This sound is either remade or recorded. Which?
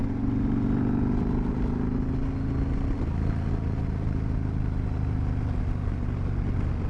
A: recorded